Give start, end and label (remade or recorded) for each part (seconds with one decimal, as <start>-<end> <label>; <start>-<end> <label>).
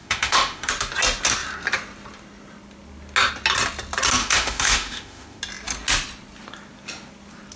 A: 0.0-0.7 remade; 0.7-4.2 recorded; 4.2-5.4 remade; 5.4-7.6 recorded